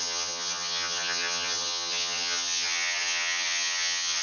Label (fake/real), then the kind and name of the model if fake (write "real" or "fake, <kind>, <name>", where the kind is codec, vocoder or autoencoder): fake, vocoder, HiFi-GAN